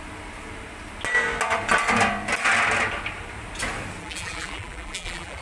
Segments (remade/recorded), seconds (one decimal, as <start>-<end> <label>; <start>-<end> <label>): 0.0-4.0 recorded; 4.0-5.4 remade